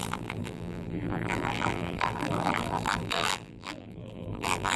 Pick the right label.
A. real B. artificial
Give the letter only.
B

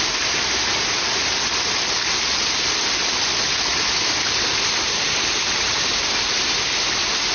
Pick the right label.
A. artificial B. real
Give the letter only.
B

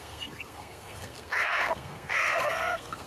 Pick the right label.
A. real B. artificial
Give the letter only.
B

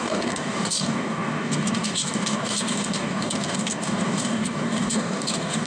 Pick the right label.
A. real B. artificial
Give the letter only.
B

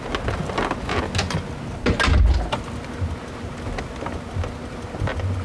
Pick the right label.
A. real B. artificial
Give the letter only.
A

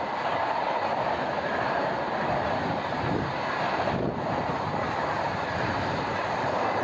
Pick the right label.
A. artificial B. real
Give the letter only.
B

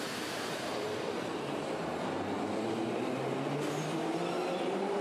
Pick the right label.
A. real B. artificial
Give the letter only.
A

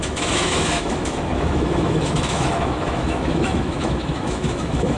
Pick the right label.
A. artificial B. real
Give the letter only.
A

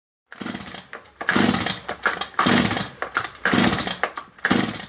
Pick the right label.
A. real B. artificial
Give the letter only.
A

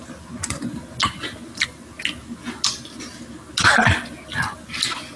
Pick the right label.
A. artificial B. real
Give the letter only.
B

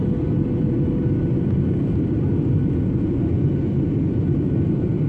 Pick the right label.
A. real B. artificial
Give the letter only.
A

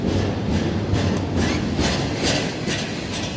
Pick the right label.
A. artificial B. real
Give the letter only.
B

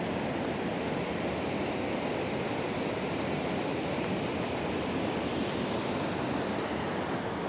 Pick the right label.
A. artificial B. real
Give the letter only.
B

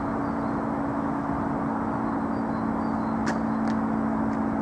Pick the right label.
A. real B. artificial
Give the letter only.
A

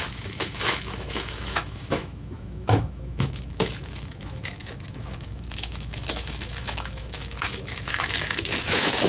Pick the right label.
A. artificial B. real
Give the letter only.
A